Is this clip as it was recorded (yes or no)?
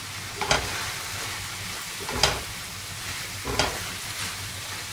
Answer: yes